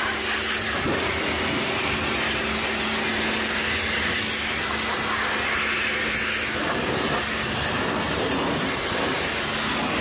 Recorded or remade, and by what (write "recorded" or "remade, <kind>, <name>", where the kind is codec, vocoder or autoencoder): recorded